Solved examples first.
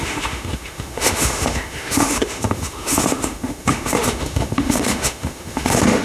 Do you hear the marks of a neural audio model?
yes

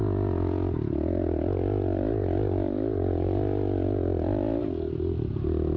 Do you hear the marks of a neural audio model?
no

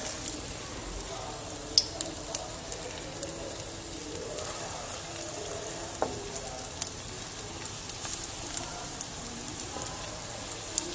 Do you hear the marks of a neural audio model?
no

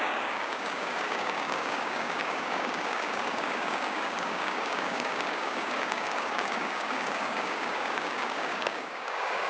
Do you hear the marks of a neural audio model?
yes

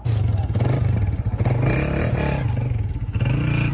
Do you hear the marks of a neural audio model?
no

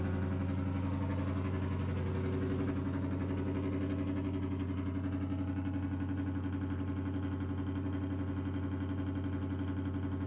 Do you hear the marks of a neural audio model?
no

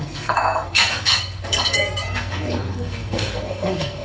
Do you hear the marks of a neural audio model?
yes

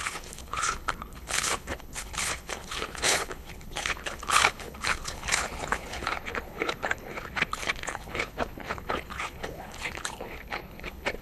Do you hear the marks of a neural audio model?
yes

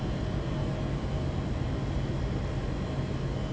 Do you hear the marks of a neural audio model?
no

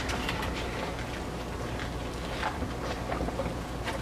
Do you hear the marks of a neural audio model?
no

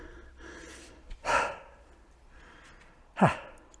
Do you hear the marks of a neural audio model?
no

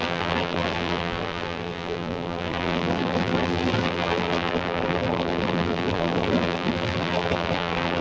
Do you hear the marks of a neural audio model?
yes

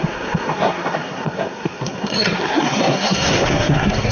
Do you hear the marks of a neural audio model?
yes